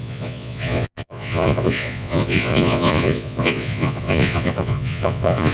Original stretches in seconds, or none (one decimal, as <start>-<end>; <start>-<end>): none